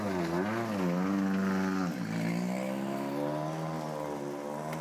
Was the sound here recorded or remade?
recorded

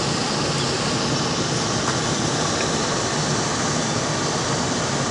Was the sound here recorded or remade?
recorded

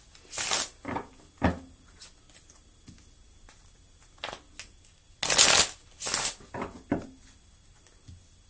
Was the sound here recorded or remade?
recorded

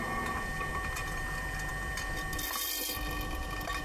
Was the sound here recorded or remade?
recorded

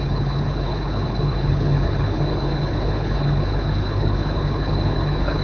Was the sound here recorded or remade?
remade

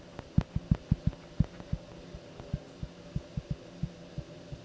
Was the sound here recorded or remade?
recorded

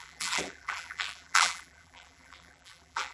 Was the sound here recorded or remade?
remade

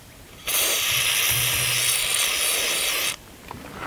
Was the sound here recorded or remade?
recorded